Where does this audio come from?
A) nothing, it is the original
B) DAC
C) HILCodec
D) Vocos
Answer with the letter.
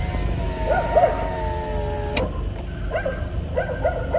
A